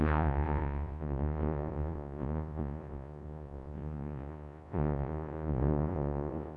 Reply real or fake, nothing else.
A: fake